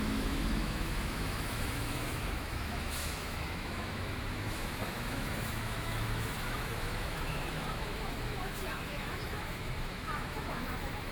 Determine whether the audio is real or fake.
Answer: fake